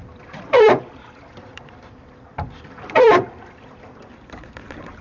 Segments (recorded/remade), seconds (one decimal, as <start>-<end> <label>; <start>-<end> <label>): 0.0-5.0 remade